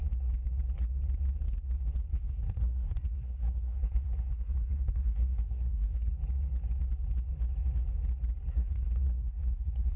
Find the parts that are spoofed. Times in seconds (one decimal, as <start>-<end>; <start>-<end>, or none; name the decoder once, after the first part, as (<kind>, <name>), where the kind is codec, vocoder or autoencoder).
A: 2.1-6.1 (codec, SNAC); 8.5-10.0